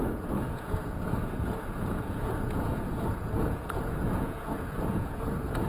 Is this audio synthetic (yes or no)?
yes